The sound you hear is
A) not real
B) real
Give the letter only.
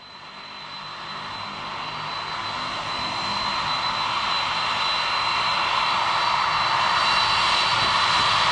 B